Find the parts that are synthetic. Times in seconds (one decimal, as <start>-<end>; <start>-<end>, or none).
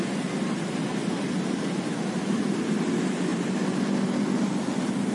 none